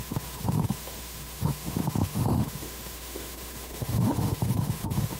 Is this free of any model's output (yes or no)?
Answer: no